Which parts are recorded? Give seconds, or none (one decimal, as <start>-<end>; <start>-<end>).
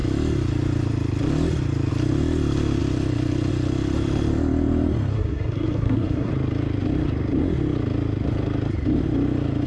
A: 0.0-5.1; 6.3-9.7